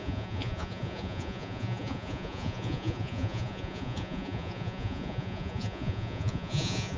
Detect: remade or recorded remade